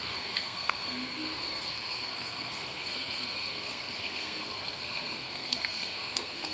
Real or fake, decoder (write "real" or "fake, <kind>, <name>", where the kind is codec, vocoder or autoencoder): fake, codec, SNAC